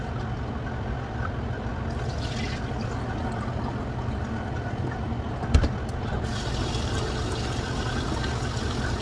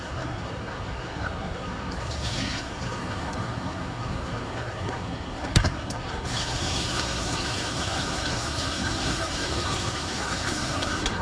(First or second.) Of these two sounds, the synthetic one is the second